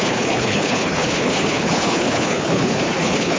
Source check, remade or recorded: remade